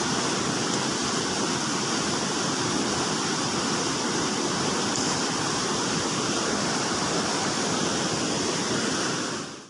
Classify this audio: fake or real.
real